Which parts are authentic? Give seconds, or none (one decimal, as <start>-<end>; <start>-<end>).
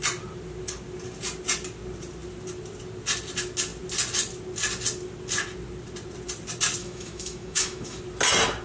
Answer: 0.0-6.8; 8.0-8.6